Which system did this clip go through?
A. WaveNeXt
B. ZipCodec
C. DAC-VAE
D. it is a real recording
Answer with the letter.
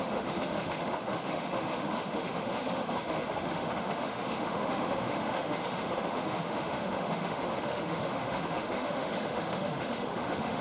C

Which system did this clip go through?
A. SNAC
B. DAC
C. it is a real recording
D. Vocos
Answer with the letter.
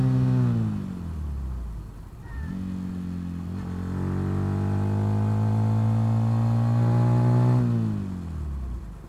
C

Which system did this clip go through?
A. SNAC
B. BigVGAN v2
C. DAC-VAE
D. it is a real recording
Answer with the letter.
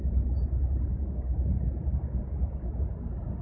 D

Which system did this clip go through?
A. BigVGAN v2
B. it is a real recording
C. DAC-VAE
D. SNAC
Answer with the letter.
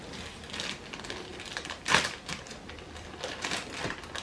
B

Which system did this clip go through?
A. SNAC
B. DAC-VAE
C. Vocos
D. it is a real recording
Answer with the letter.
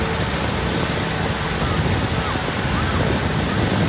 D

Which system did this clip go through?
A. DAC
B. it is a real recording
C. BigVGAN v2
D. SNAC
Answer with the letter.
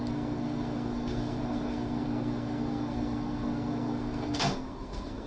D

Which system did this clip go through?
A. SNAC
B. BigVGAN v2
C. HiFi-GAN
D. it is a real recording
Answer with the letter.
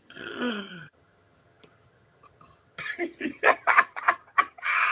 C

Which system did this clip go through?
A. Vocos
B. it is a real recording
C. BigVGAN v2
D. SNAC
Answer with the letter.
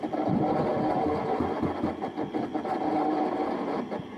B